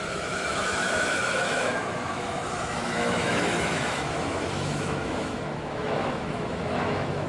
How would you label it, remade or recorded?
remade